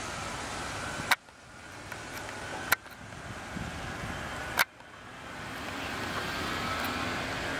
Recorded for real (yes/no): yes